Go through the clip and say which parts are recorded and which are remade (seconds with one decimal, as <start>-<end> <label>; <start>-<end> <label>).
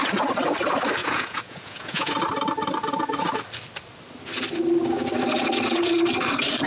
0.0-1.0 recorded; 1.0-2.1 remade; 2.1-6.7 recorded